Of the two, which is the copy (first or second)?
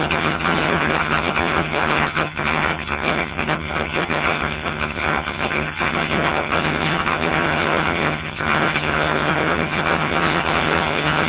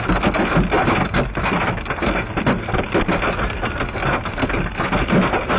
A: first